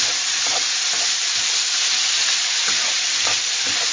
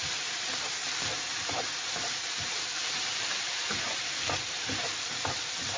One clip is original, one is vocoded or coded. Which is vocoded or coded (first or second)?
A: second